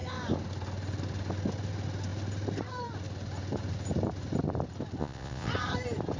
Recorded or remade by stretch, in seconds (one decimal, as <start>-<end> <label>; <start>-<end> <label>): 0.0-5.0 recorded; 5.0-5.5 remade; 5.5-6.2 recorded